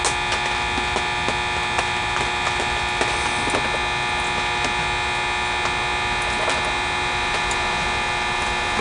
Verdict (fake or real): real